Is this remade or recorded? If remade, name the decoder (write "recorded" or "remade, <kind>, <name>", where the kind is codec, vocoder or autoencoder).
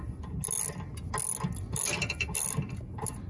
recorded